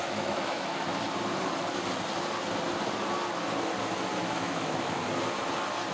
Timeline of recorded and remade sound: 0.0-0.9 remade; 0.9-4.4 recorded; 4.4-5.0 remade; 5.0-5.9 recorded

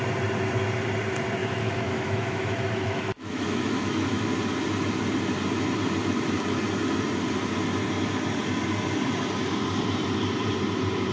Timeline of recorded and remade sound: 0.0-1.4 recorded; 1.4-4.1 remade; 4.1-11.1 recorded

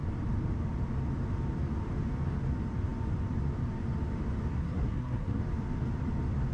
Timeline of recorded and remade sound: 0.0-4.5 recorded; 4.5-5.4 remade; 5.4-6.5 recorded

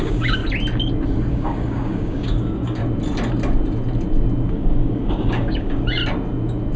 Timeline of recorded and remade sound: 0.0-0.4 remade; 0.4-1.3 recorded; 1.3-2.8 remade; 2.8-4.5 recorded; 4.5-6.0 remade; 6.0-6.8 recorded

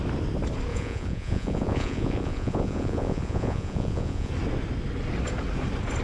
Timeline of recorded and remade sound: 0.0-0.7 recorded; 0.7-4.3 remade; 4.3-6.0 recorded

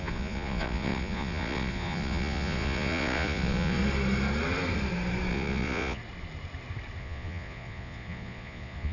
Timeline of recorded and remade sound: 0.0-3.8 remade; 3.8-5.3 recorded; 5.3-6.0 remade; 6.0-7.0 recorded; 7.0-8.9 remade

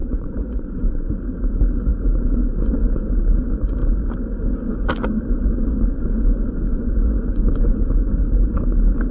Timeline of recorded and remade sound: 0.0-1.1 remade; 1.1-6.7 recorded; 6.7-7.4 remade; 7.4-9.1 recorded